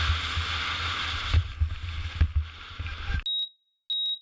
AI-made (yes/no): no